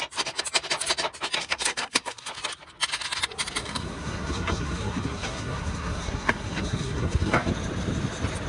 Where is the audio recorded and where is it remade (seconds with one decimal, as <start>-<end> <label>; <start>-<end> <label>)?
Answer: 0.0-1.4 recorded; 1.4-2.3 remade; 2.3-3.6 recorded; 3.6-7.5 remade; 7.5-8.5 recorded